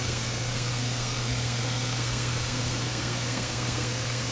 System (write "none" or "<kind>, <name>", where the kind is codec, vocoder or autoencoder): codec, SNAC